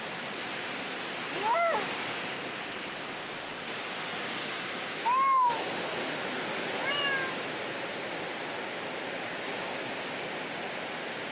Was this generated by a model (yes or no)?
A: no